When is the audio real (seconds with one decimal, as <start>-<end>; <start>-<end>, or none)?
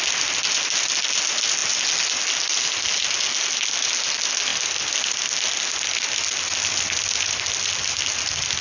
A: 0.0-8.6